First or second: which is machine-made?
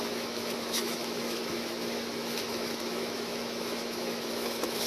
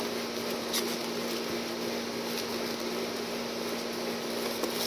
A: first